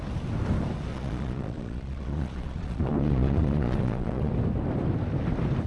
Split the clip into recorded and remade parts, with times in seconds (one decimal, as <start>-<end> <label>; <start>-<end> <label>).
0.0-0.9 recorded; 0.9-4.3 remade; 4.3-5.7 recorded